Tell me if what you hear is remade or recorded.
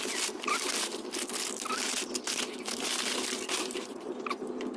recorded